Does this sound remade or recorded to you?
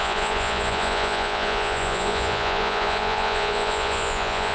remade